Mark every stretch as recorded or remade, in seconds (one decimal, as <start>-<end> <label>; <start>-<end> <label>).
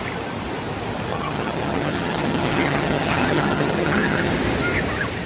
0.0-1.1 recorded; 1.1-4.3 remade; 4.3-5.3 recorded